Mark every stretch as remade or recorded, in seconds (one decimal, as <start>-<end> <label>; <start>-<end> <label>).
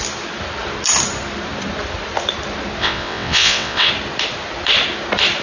0.0-2.8 recorded; 2.8-3.9 remade; 3.9-5.4 recorded